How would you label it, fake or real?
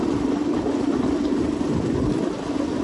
real